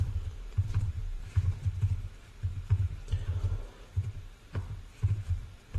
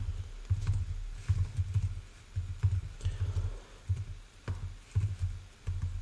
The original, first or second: second